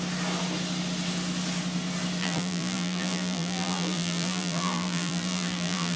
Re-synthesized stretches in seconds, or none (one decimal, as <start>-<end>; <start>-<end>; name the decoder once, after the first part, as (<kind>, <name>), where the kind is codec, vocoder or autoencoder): 2.2-6.0 (vocoder, BigVGAN v2)